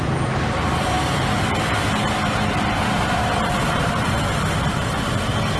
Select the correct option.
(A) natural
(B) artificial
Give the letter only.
A